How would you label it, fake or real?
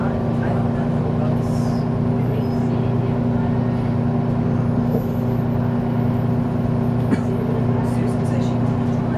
real